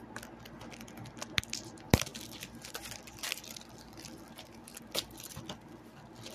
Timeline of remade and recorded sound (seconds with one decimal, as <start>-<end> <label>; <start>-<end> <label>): 0.0-2.1 recorded; 2.1-4.8 remade; 4.8-6.3 recorded